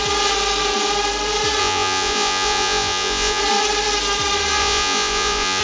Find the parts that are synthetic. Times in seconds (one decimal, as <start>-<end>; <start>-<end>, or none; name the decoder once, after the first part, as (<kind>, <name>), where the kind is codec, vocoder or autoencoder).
1.6-3.4 (vocoder, Vocos); 4.6-5.6